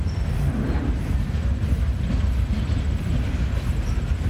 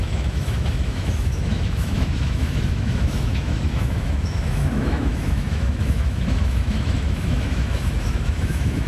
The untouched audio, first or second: first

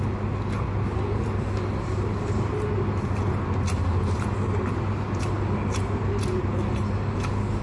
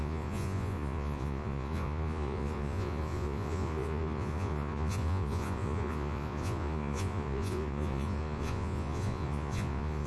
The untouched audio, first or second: first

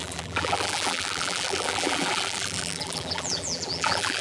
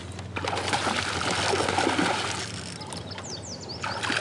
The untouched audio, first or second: second